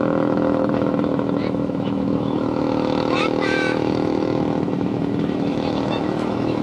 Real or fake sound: fake